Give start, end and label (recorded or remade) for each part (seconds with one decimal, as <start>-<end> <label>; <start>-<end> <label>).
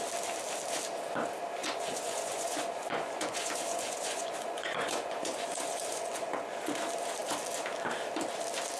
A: 0.0-1.6 recorded; 1.6-6.7 remade; 6.7-8.8 recorded